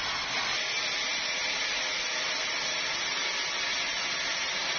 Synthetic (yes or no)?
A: no